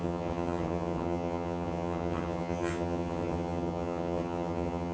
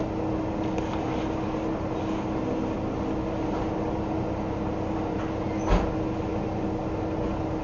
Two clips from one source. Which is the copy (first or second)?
first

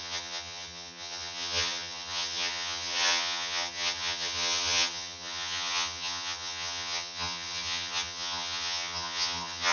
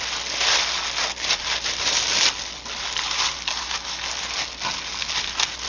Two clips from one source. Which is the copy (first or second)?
first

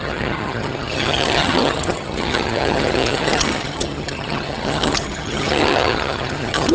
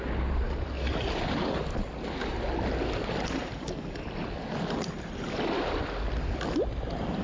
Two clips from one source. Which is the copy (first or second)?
first